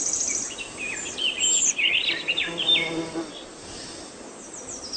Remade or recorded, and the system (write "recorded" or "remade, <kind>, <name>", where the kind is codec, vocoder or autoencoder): recorded